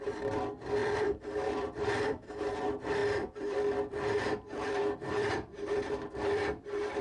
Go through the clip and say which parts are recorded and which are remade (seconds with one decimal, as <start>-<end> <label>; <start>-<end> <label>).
0.0-0.8 recorded; 0.8-2.3 remade; 2.3-3.0 recorded; 3.0-7.0 remade